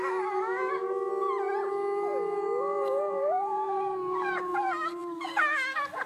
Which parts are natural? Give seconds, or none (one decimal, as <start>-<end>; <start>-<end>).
1.1-1.7